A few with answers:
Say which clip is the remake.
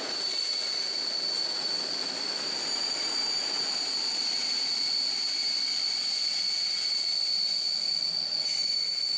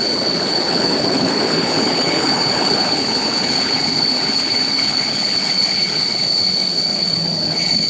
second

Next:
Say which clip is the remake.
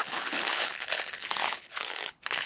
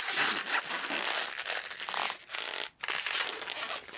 first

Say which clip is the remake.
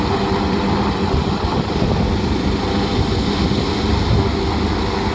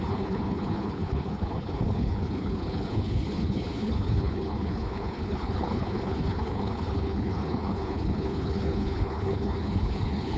second